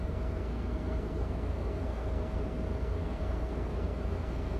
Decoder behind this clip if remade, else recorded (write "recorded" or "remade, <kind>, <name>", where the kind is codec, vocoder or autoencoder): remade, codec, SNAC